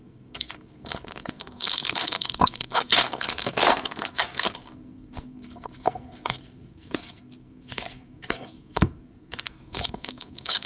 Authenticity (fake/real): fake